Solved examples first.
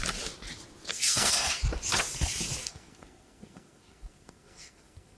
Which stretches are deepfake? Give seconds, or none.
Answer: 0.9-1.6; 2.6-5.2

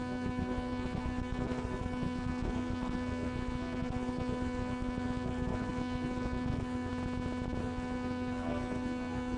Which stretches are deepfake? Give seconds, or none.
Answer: 0.0-6.9; 7.6-9.4

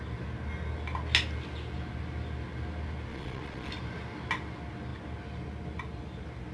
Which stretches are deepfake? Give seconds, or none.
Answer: 3.1-3.7

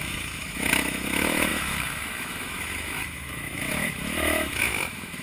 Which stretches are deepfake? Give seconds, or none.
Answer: 0.0-5.2